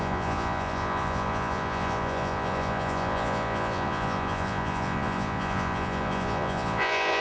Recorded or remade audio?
remade